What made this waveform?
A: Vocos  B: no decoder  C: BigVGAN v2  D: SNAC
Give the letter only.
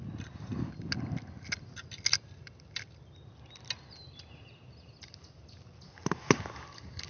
B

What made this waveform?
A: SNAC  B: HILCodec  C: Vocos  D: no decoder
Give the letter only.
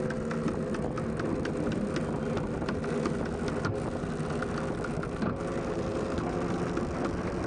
D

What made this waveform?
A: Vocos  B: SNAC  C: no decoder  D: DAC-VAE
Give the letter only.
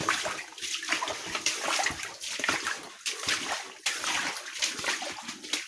C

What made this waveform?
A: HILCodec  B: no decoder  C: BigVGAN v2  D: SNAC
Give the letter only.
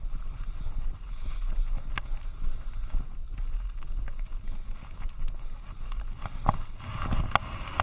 B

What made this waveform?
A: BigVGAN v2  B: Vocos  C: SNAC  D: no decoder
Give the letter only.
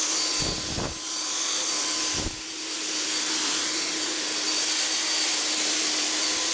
D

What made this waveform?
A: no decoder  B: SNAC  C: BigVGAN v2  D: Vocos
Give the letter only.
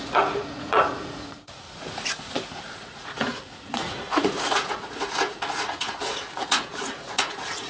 D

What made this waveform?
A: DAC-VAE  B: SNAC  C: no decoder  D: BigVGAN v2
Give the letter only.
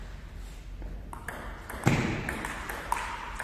C